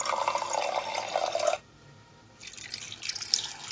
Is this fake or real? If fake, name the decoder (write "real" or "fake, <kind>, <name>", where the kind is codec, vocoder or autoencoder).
real